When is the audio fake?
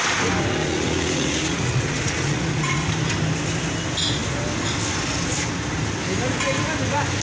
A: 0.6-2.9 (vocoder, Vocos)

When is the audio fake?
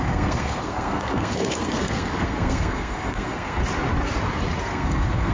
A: 0.0-3.6 (codec, SNAC); 4.6-5.3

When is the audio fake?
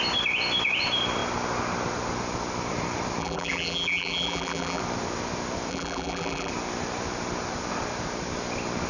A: 3.2-4.8 (vocoder, BigVGAN v2); 5.7-6.5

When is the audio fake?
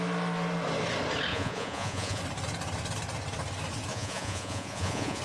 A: 1.3-2.2 (vocoder, Vocos); 3.9-5.2